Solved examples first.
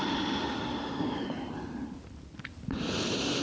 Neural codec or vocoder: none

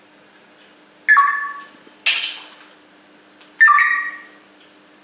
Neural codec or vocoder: none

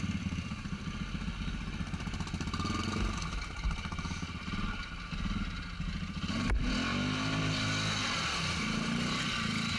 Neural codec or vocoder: none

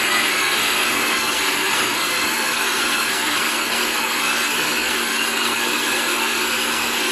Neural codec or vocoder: codec, SNAC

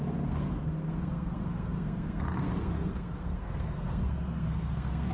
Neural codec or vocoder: codec, SNAC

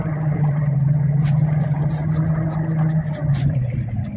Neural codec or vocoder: none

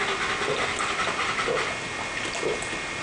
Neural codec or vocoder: none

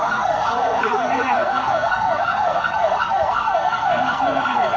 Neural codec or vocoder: codec, SNAC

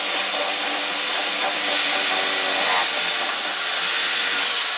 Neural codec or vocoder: none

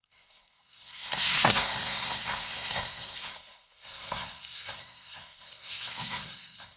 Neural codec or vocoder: codec, SNAC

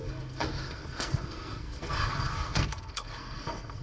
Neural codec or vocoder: codec, SNAC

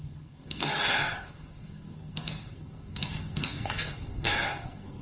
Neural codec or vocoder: codec, SNAC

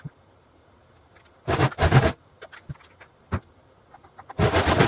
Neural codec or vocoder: none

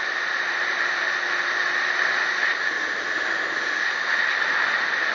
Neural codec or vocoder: none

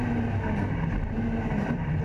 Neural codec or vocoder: none